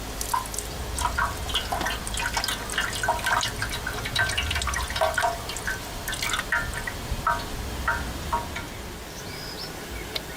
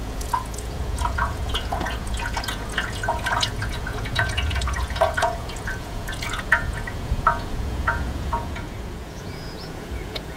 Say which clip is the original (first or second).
first